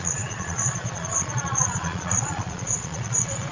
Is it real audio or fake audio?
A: fake